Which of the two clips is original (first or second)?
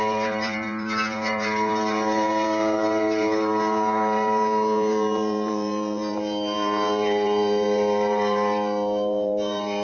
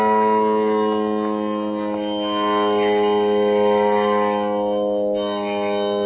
second